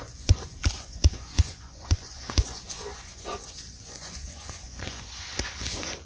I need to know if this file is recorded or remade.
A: remade